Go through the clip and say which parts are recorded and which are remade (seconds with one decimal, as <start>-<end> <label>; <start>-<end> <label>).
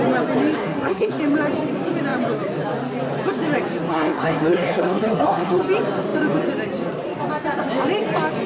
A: 0.0-0.6 recorded; 0.6-1.2 remade; 1.2-3.9 recorded; 3.9-5.6 remade; 5.6-8.5 recorded